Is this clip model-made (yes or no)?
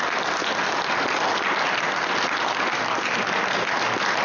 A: no